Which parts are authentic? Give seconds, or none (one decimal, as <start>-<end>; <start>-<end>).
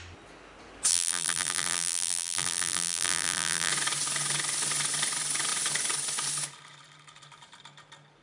0.0-0.9; 3.7-8.2